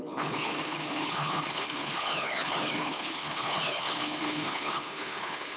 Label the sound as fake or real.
fake